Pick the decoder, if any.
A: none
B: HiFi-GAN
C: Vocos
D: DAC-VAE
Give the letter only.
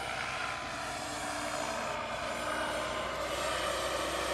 A